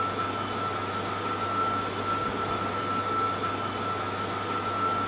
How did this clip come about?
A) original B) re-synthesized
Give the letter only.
A